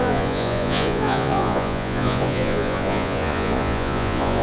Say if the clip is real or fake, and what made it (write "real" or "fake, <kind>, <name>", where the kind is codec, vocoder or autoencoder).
fake, vocoder, Vocos